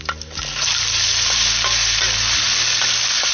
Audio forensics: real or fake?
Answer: real